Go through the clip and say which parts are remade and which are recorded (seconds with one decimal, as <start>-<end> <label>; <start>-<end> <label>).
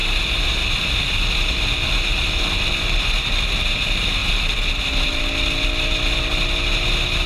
0.0-7.3 recorded